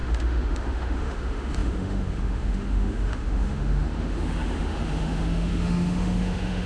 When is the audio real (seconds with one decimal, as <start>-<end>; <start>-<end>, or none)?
none